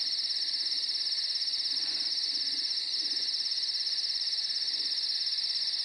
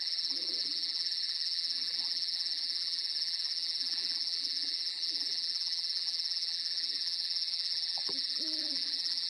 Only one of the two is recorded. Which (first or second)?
first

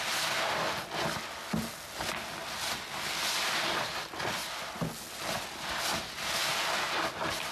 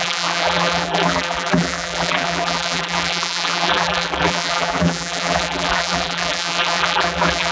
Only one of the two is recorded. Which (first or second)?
first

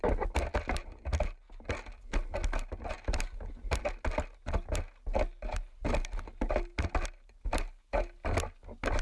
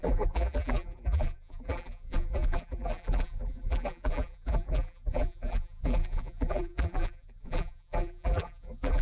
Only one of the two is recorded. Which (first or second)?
first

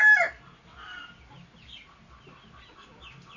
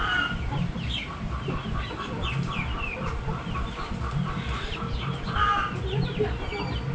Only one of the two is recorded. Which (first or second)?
first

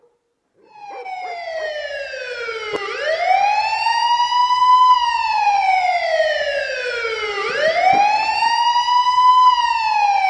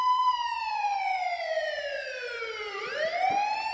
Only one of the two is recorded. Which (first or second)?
first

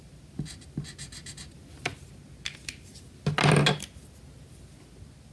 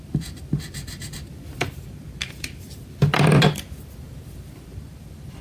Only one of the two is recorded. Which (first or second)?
first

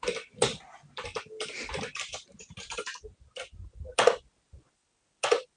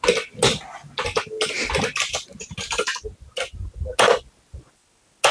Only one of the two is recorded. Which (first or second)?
second